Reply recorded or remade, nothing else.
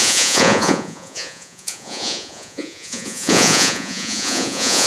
remade